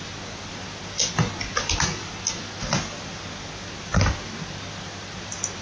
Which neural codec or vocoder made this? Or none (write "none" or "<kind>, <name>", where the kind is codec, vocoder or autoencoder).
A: none